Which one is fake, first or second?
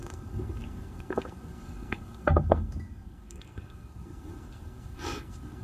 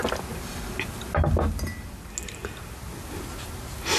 first